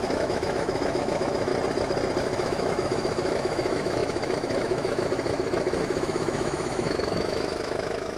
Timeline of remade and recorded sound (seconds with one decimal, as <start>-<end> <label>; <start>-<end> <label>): 0.0-1.5 remade; 1.5-2.2 recorded; 2.2-8.2 remade